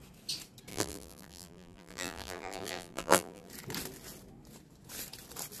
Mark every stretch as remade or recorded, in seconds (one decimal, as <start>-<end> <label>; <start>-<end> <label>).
0.0-0.7 recorded; 0.7-3.5 remade; 3.5-5.6 recorded